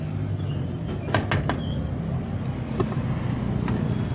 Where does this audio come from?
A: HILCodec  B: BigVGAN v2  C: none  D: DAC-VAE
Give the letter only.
C